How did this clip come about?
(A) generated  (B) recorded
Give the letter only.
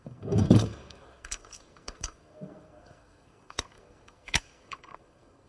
A